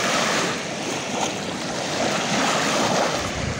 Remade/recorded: recorded